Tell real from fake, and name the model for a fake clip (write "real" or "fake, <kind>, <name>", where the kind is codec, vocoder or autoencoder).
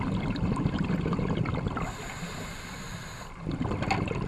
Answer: real